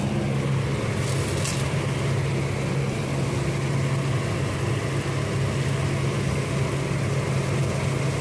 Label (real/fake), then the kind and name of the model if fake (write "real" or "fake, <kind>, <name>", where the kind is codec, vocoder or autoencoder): real